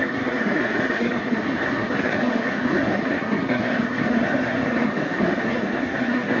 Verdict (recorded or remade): remade